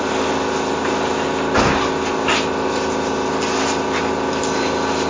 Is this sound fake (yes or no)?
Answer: no